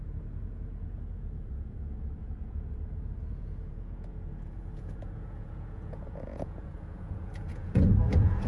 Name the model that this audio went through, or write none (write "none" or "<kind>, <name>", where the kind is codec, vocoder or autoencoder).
vocoder, Vocos